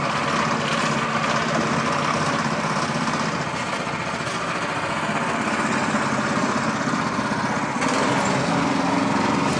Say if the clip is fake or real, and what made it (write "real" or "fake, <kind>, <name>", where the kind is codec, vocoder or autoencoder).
real